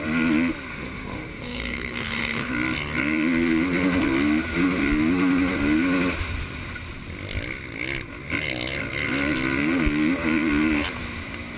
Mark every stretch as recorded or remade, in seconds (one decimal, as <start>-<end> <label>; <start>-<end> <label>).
0.0-0.7 recorded; 0.7-2.5 remade; 2.5-11.6 recorded